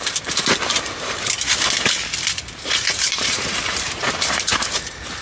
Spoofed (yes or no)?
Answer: yes